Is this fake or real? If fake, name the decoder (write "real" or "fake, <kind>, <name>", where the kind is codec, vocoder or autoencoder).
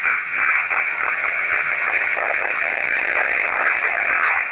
fake, vocoder, HiFi-GAN